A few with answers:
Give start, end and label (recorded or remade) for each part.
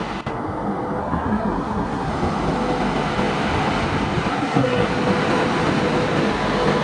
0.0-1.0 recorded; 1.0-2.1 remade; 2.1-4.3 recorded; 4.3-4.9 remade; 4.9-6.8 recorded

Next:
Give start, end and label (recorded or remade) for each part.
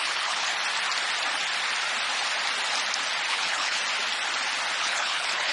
0.0-0.5 remade; 0.5-3.3 recorded; 3.3-3.8 remade; 3.8-4.8 recorded; 4.8-5.5 remade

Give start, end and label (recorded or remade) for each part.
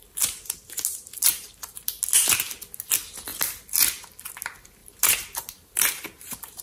0.0-1.9 remade; 1.9-4.8 recorded; 4.8-6.6 remade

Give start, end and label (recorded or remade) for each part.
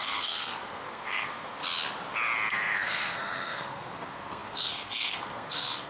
0.0-1.6 remade; 1.6-2.5 recorded; 2.5-5.9 remade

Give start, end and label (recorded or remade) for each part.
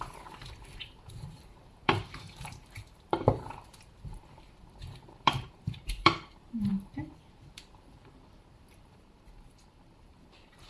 0.0-10.7 remade